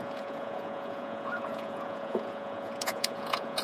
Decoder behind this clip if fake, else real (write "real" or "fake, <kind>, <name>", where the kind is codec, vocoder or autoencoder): fake, vocoder, Vocos